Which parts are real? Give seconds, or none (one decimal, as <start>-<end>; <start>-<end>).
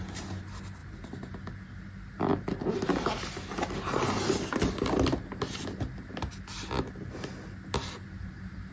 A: 0.0-8.7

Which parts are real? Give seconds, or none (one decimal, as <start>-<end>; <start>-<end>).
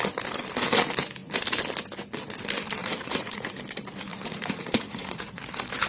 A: 0.0-2.8; 3.5-4.1; 5.4-5.9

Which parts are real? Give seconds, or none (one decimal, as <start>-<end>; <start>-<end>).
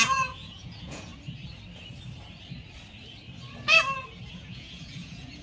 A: 1.1-4.3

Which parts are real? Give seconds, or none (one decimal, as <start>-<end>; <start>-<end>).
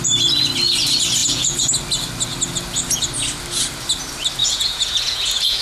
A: 0.0-1.2; 1.7-4.4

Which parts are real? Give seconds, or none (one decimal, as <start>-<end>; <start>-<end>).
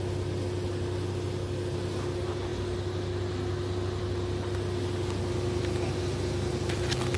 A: 0.0-7.2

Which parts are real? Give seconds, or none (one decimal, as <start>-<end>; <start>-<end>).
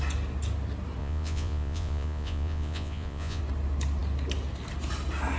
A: 0.0-1.0; 3.4-5.4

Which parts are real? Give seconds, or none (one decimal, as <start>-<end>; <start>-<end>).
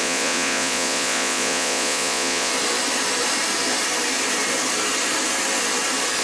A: 2.5-6.2